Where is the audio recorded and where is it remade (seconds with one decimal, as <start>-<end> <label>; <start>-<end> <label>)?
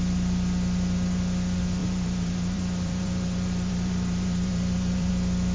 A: 0.0-1.8 recorded; 1.8-5.1 remade; 5.1-5.5 recorded